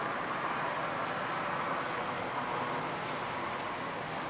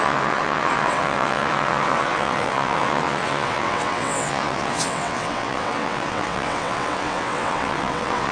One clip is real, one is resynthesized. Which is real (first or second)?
first